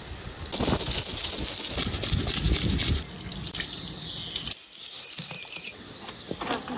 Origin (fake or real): real